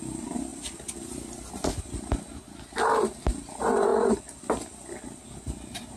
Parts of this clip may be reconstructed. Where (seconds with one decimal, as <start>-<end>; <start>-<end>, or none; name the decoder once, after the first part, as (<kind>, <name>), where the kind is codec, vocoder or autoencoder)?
none